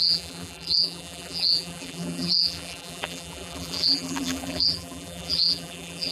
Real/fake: fake